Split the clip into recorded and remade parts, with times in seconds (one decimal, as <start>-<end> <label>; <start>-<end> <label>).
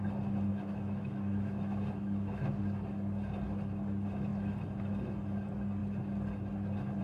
0.0-0.5 recorded; 0.5-2.6 remade; 2.6-7.0 recorded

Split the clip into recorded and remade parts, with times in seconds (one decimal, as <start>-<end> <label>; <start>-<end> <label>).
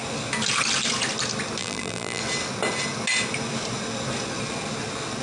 0.0-1.6 recorded; 1.6-2.2 remade; 2.2-5.2 recorded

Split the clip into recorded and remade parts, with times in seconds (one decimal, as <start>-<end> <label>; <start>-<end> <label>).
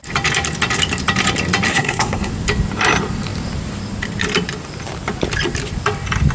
0.0-1.7 recorded; 1.7-2.3 remade; 2.3-6.3 recorded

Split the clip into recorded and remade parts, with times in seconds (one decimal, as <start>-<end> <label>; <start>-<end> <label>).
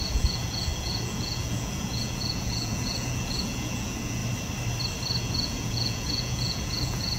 0.0-4.2 remade; 4.2-5.2 recorded; 5.2-7.2 remade